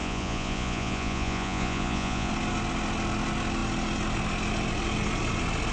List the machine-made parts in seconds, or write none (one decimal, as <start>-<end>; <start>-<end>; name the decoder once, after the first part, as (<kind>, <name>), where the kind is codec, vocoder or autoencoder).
0.0-2.3 (vocoder, Vocos)